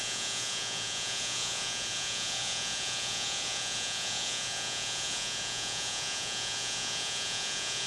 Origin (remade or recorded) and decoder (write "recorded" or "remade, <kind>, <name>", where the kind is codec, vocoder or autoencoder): remade, vocoder, Vocos